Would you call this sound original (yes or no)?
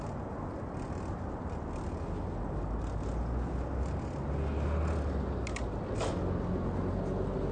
yes